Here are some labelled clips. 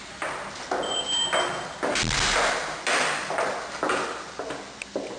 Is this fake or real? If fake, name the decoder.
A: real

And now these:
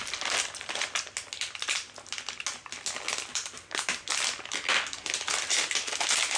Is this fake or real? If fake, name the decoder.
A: real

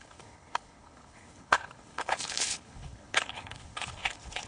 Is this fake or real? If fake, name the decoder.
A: fake, codec, HILCodec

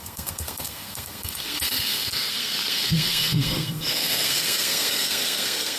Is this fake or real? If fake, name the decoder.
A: fake, codec, SNAC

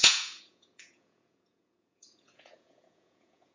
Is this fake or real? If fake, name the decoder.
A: fake, vocoder, Vocos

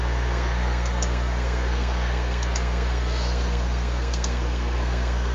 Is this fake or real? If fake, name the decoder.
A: fake, codec, SNAC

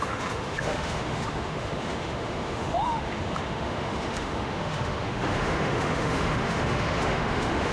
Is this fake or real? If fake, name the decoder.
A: fake, autoencoder, DAC-VAE